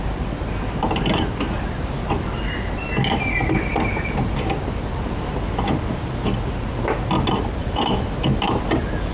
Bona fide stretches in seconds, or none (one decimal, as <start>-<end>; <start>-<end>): 0.0-7.6; 8.6-9.1